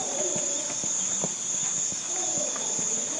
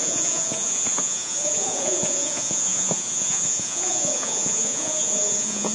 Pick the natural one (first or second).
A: first